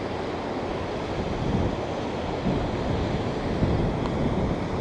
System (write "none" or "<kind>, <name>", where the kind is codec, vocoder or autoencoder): none